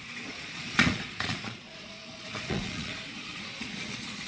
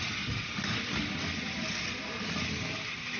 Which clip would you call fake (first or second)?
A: first